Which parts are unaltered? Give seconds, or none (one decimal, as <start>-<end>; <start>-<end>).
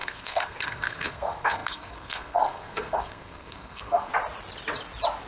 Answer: 4.1-5.3